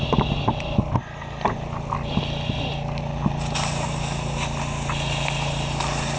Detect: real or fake real